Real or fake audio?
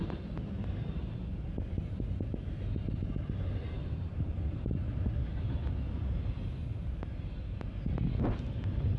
real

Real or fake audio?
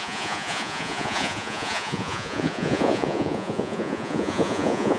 fake